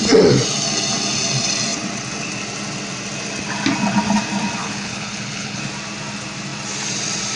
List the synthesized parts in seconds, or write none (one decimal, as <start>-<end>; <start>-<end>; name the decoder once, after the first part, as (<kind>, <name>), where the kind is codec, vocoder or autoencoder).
4.6-5.6 (codec, HILCodec)